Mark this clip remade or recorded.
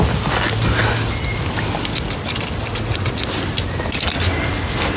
recorded